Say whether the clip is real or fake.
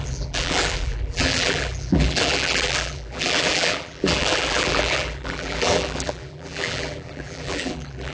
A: fake